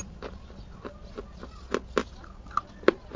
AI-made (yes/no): no